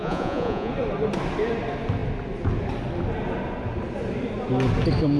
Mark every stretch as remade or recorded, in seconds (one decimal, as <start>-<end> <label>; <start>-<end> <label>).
0.0-0.7 remade; 0.7-5.2 recorded